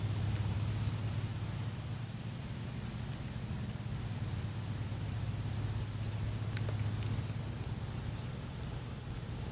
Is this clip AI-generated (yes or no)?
no